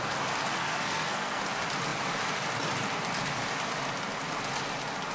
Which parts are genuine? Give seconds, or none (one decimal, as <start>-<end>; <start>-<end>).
0.0-0.6; 1.4-5.1